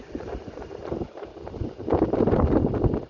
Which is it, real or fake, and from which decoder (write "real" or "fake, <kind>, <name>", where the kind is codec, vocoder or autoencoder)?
real